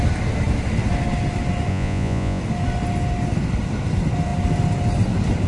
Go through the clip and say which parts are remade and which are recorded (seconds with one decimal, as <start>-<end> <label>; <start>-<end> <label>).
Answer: 0.0-1.7 recorded; 1.7-2.4 remade; 2.4-5.5 recorded